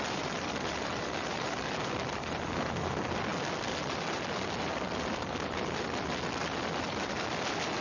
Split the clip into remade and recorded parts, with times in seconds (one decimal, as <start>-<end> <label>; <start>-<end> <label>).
0.0-7.8 recorded